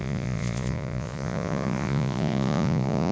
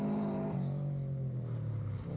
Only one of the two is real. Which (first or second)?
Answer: second